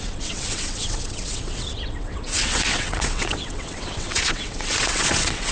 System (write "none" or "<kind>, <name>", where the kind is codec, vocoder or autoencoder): vocoder, WaveNeXt